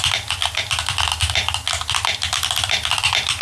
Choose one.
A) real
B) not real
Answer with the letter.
A